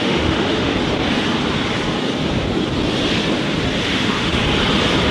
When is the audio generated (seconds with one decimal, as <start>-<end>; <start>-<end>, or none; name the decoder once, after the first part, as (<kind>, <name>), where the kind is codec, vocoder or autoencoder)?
0.0-0.7 (autoencoder, DAC-VAE); 3.8-4.4